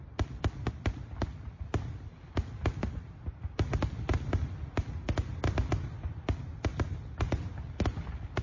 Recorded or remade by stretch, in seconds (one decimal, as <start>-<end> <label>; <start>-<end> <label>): 0.0-8.4 recorded